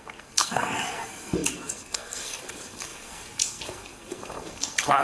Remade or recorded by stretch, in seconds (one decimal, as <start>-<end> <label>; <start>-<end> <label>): 0.0-5.0 remade